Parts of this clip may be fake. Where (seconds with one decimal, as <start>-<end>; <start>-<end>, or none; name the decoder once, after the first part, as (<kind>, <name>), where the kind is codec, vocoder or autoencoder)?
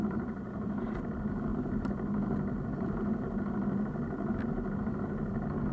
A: none